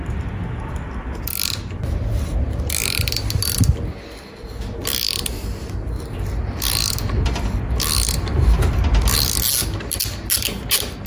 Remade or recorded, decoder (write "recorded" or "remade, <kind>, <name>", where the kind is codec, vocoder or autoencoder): recorded